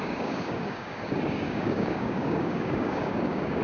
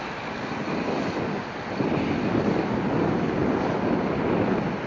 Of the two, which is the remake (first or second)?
first